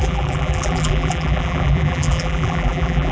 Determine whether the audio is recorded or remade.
remade